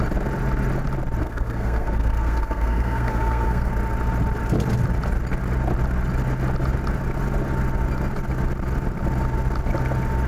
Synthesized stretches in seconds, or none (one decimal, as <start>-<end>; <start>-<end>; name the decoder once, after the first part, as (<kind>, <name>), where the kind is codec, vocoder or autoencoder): 1.2-3.7 (codec, SNAC)